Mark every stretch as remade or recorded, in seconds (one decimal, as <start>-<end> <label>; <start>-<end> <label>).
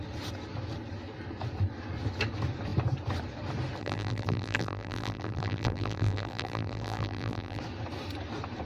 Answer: 0.0-3.8 recorded; 3.8-7.6 remade; 7.6-8.7 recorded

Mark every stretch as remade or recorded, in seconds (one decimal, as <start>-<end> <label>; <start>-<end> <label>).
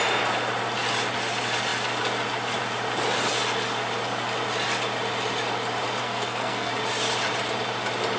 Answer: 0.0-6.0 recorded; 6.0-6.7 remade; 6.7-8.2 recorded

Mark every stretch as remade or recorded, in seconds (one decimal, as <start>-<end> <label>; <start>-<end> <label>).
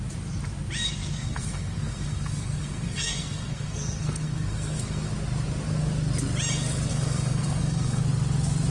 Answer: 0.0-1.0 recorded; 1.0-5.1 remade; 5.1-6.9 recorded; 6.9-8.0 remade; 8.0-8.7 recorded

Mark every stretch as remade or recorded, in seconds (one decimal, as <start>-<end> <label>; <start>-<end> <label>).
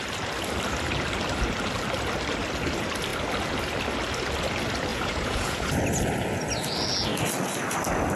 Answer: 0.0-4.9 recorded; 4.9-5.7 remade; 5.7-8.2 recorded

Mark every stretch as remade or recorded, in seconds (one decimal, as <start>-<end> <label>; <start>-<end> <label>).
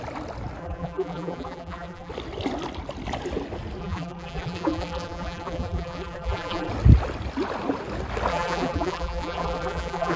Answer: 0.0-0.6 recorded; 0.6-2.1 remade; 2.1-3.8 recorded; 3.8-6.7 remade; 6.7-8.3 recorded; 8.3-10.2 remade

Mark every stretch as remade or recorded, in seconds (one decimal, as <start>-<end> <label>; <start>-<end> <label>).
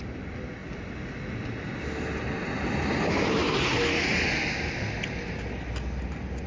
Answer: 0.0-6.5 recorded